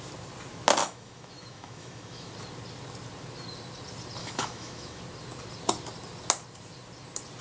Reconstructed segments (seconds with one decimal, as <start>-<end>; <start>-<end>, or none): 0.8-2.3; 4.2-5.0

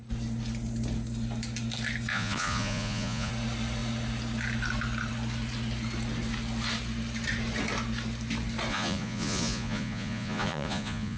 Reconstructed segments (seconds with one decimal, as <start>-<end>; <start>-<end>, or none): 2.1-3.3; 8.7-11.2

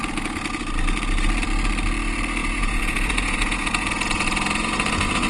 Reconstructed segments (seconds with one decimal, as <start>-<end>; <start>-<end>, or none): 2.4-5.3

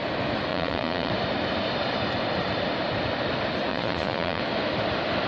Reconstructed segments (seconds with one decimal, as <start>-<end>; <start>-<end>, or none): 0.5-1.1; 3.7-4.4